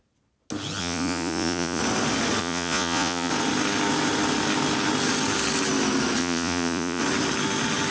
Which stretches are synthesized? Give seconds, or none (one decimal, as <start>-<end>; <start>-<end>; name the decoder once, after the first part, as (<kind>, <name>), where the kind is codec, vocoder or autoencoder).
0.8-1.8 (vocoder, Vocos); 2.4-3.3; 6.2-7.0